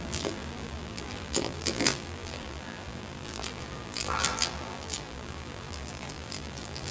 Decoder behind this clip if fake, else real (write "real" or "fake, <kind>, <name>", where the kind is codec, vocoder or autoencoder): fake, vocoder, BigVGAN v2